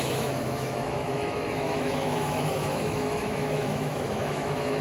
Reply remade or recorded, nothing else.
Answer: remade